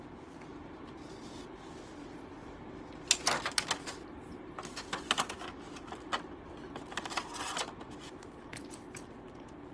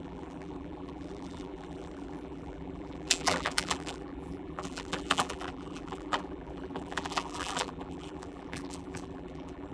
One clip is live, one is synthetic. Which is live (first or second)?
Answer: first